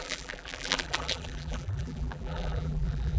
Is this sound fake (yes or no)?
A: yes